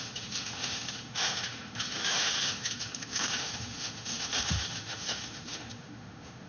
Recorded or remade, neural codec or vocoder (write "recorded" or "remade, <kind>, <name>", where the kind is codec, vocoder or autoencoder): remade, autoencoder, DAC-VAE